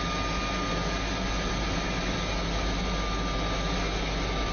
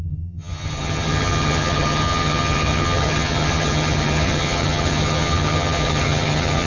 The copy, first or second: second